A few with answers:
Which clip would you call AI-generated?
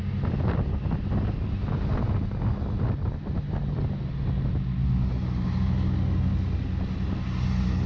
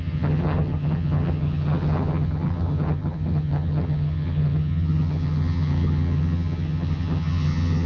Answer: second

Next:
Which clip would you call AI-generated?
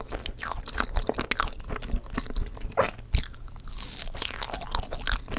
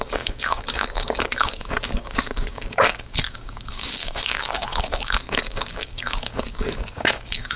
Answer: second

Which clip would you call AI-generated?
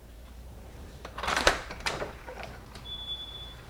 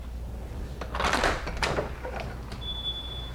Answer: first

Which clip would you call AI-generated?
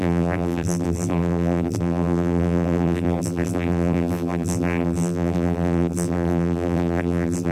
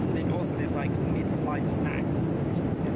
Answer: first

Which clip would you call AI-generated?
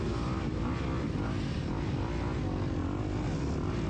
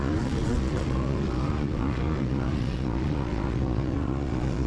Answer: second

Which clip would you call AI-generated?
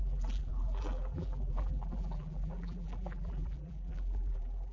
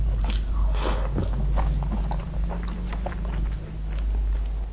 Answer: first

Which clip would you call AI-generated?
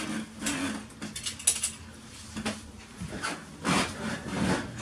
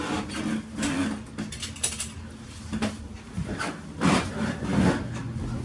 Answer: second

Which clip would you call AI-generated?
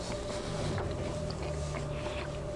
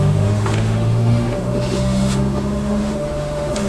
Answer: second